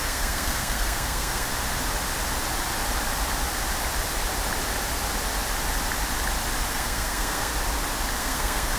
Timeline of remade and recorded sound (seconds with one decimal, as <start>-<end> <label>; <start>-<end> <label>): 0.0-1.5 remade; 1.5-6.7 recorded; 6.7-7.5 remade; 7.5-8.2 recorded; 8.2-8.8 remade